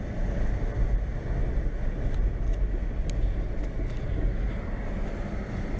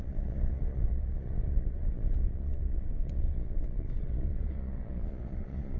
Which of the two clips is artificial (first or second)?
second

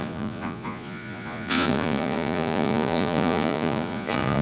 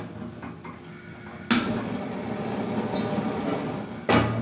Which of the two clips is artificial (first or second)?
first